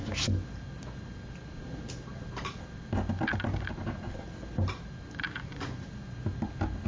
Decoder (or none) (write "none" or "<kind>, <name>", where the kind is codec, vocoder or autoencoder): none